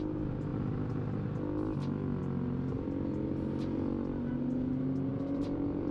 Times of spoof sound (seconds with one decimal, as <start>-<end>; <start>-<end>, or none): none